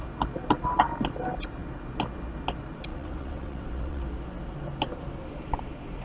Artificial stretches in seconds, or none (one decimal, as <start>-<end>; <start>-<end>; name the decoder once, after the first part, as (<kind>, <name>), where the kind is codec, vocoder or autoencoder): 2.9-4.0 (vocoder, WaveNeXt)